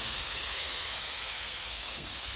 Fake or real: fake